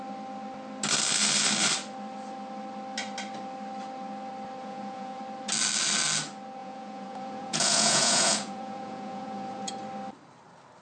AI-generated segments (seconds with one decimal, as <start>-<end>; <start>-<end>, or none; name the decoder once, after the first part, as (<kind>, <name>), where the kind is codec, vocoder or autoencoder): 4.6-5.2 (vocoder, Vocos); 6.6-9.7